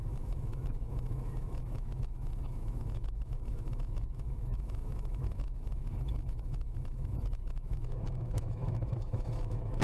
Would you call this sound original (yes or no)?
no